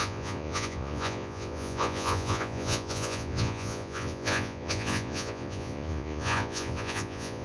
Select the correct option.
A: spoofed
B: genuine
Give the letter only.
A